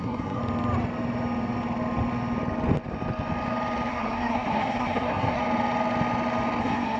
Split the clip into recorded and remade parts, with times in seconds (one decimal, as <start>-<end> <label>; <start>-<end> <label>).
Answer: 0.0-0.4 remade; 0.4-3.9 recorded; 3.9-5.4 remade; 5.4-6.6 recorded; 6.6-7.0 remade